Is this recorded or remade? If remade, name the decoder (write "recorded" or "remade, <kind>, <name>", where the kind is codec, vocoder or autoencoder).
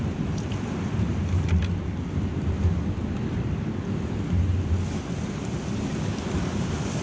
recorded